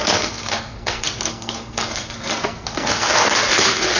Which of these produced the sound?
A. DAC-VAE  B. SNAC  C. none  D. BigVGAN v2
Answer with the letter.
B